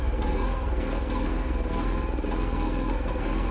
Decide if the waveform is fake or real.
fake